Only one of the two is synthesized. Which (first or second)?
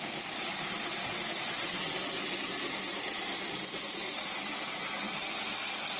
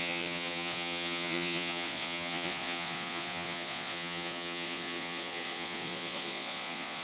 second